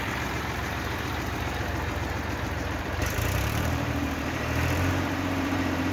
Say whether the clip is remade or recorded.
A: remade